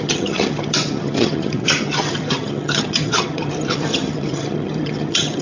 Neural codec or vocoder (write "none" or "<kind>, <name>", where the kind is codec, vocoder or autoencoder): vocoder, HiFi-GAN